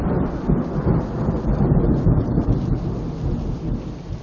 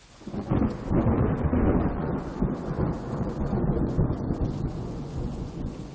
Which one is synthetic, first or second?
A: second